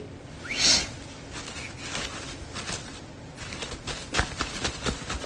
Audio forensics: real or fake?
real